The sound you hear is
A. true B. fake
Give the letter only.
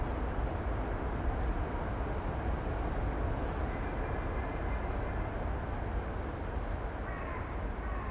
A